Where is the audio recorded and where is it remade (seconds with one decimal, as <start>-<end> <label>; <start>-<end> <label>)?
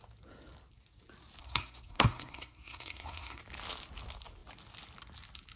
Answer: 0.0-1.4 recorded; 1.4-3.4 remade; 3.4-5.6 recorded